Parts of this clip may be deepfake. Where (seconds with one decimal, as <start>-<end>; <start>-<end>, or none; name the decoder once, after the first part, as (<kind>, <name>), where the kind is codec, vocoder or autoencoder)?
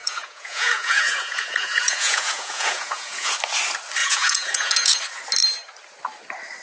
0.0-3.3 (vocoder, Vocos); 4.0-5.0